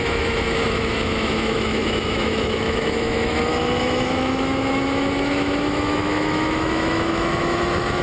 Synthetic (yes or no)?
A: yes